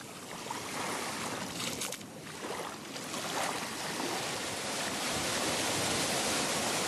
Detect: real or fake real